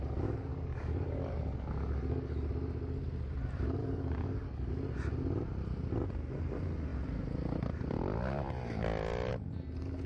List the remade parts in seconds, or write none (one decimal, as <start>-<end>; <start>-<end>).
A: 0.5-2.5; 3.8-4.7